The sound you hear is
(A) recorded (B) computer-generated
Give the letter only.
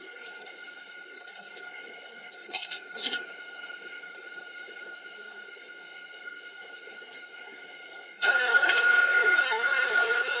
B